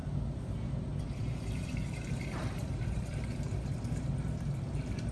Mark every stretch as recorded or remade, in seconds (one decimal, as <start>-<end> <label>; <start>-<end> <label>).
0.0-1.0 recorded; 1.0-3.5 remade; 3.5-4.0 recorded; 4.0-5.1 remade